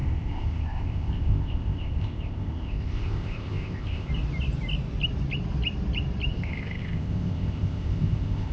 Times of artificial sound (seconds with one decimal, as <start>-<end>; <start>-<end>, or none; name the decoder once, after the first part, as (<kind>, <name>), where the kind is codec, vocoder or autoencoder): 0.0-4.1 (codec, ZipCodec); 6.3-8.5